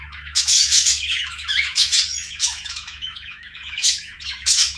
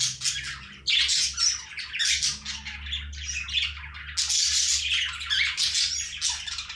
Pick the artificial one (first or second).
first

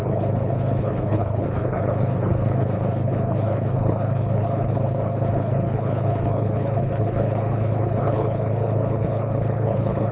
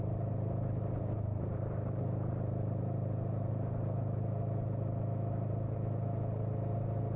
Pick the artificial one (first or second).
first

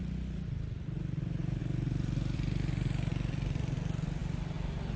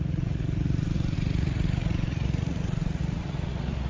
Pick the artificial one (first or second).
second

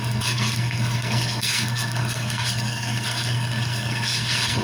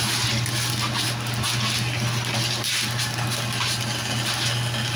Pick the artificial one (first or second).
first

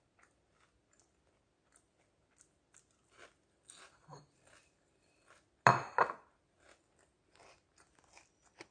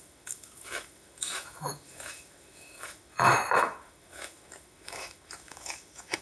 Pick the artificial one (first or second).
second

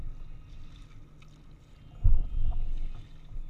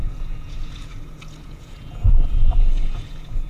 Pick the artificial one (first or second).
second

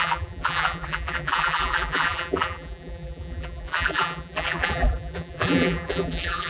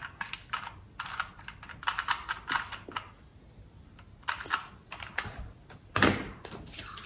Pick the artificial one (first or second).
first